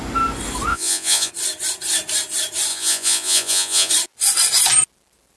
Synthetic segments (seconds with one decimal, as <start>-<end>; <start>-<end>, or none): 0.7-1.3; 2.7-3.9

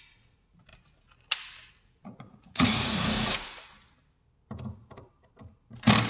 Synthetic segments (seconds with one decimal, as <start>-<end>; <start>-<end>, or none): 0.0-0.7; 1.7-3.7

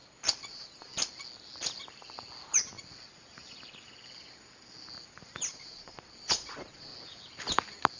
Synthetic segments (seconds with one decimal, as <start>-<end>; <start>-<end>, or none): 0.5-0.9; 5.5-6.9

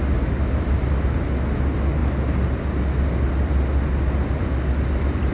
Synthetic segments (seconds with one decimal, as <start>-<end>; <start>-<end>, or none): none

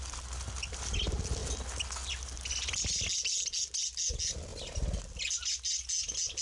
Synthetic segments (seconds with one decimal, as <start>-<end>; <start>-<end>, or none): none